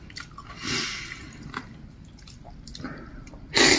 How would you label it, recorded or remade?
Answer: recorded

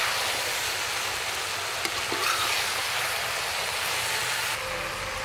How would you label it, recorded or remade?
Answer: recorded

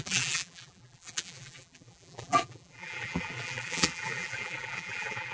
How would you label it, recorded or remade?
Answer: remade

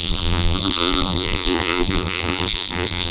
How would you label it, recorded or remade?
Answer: remade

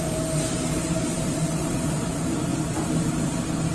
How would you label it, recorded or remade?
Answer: remade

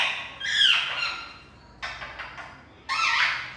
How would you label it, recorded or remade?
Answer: recorded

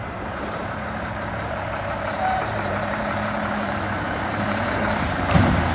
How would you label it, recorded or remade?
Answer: remade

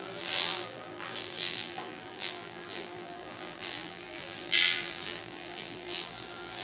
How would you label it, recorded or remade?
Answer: remade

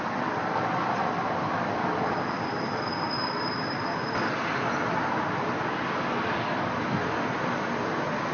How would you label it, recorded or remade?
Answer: remade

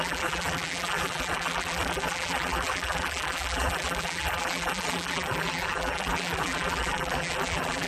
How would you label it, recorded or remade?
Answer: remade